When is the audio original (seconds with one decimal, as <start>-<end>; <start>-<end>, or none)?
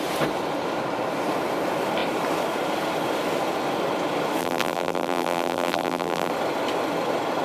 0.0-4.4; 6.3-7.4